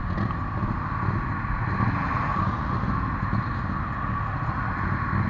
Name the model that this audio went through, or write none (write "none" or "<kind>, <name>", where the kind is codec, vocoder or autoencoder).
none